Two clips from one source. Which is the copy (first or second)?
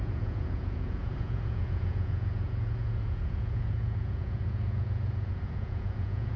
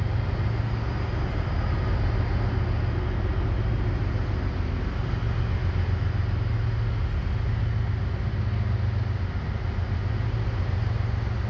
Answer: first